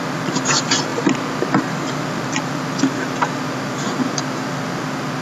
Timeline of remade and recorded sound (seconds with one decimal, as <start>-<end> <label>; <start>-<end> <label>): 0.0-5.2 recorded